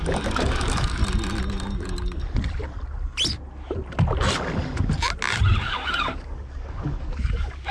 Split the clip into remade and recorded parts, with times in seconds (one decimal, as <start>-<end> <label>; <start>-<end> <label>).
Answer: 0.0-1.0 remade; 1.0-5.6 recorded; 5.6-7.7 remade